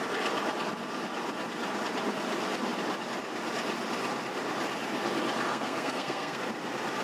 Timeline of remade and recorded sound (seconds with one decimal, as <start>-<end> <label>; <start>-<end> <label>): 0.0-5.5 recorded; 5.5-6.4 remade; 6.4-7.0 recorded